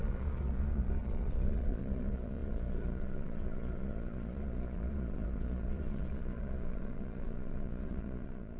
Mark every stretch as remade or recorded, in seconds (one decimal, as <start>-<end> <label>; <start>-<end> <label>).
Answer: 0.0-8.6 remade